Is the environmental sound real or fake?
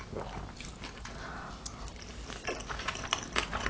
real